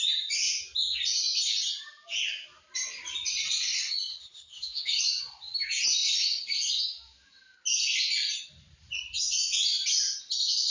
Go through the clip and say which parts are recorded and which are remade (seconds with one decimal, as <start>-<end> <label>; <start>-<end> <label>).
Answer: 0.0-4.1 recorded; 4.1-5.0 remade; 5.0-10.7 recorded